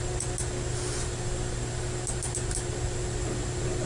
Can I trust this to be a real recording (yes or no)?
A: yes